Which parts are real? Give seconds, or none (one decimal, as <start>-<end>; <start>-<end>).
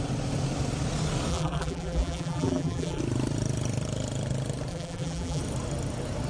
0.0-1.3; 3.0-4.7; 5.4-6.3